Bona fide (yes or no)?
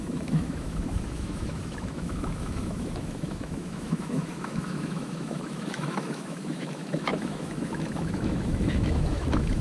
no